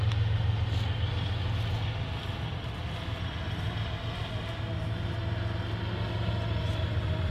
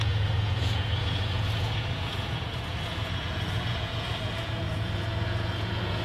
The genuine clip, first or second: first